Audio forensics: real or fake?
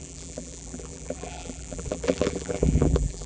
fake